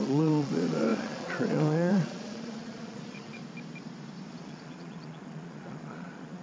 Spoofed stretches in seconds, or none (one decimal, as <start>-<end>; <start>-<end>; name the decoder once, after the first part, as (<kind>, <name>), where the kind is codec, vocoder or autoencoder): 0.0-3.4 (vocoder, Vocos); 4.3-6.4